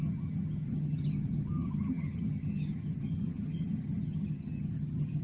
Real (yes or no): no